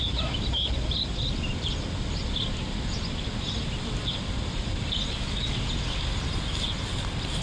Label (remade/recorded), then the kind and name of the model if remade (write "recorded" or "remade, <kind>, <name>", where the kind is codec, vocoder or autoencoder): recorded